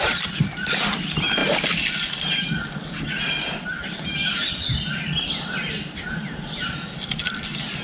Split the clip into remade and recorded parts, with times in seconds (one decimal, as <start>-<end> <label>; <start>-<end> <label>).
0.0-7.8 recorded